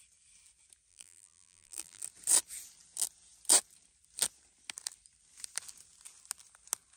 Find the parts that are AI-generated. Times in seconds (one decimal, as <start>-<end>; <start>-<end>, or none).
0.9-2.0